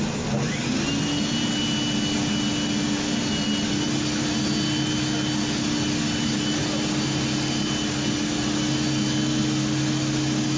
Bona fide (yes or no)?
yes